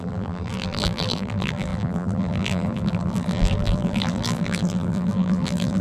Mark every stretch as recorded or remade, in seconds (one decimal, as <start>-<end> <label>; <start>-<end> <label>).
0.0-5.8 remade